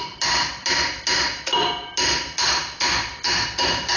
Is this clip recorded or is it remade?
recorded